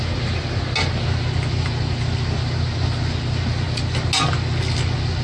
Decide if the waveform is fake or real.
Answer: real